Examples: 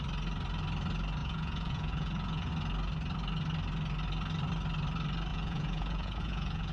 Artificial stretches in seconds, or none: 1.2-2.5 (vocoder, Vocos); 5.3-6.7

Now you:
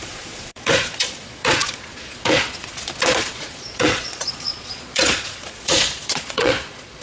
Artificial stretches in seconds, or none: 0.0-7.0 (vocoder, Vocos)

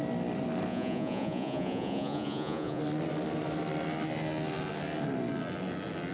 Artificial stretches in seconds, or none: 0.7-2.8 (vocoder, Vocos)